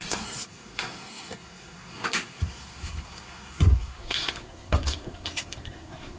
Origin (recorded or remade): remade